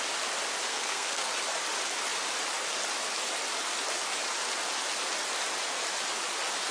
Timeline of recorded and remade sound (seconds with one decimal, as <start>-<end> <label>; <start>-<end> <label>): 0.0-0.7 recorded; 0.7-1.3 remade; 1.3-6.7 recorded